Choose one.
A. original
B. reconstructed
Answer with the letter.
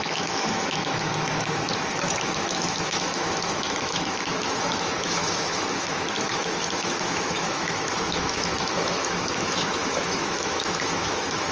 B